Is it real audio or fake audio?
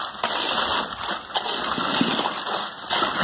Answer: real